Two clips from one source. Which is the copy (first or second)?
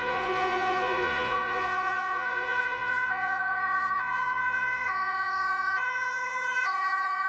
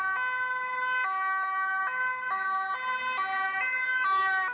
first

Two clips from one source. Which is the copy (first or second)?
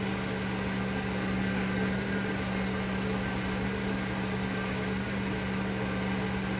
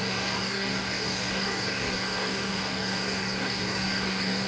second